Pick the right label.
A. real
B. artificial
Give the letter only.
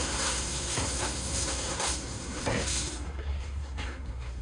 B